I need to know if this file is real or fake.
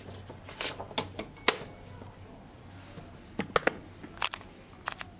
real